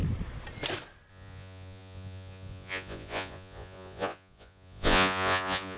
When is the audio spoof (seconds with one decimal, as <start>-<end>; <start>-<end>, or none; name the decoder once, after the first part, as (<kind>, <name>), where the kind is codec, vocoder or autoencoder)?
1.1-5.8 (vocoder, Vocos)